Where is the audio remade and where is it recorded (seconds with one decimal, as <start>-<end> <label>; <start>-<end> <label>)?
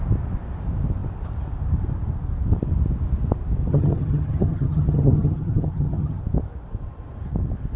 0.0-3.7 recorded; 3.7-6.2 remade; 6.2-7.8 recorded